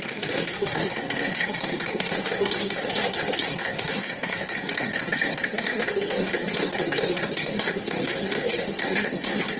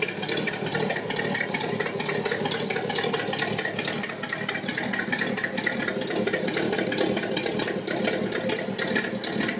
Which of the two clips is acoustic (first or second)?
second